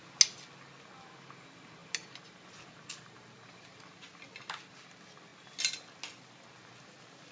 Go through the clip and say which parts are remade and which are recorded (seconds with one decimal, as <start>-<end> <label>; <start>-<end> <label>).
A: 0.0-7.3 recorded